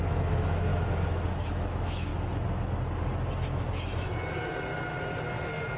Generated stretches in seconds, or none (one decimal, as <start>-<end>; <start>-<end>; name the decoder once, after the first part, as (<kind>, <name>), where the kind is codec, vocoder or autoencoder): 0.0-0.7 (autoencoder, DAC-VAE); 1.5-2.1